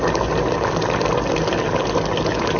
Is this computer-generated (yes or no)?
no